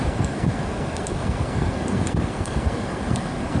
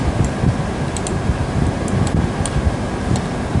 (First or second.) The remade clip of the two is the first